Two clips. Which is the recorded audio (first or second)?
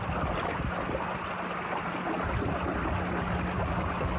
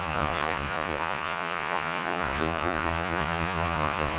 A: first